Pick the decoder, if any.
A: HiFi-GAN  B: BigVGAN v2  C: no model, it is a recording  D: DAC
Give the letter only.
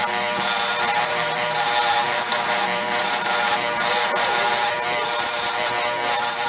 B